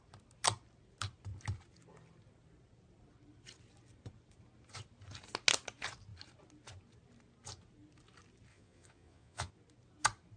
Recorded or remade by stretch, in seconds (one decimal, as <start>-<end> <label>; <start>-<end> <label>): 0.0-8.5 recorded; 8.5-9.5 remade; 9.5-10.4 recorded